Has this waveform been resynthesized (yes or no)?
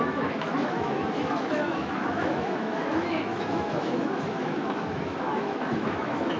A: yes